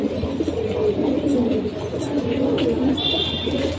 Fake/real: real